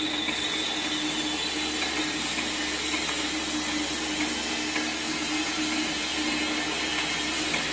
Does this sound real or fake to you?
real